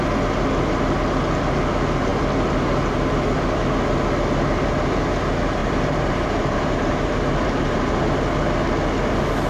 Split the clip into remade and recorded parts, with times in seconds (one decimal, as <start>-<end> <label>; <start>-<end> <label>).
0.0-5.6 recorded; 5.6-7.9 remade; 7.9-9.5 recorded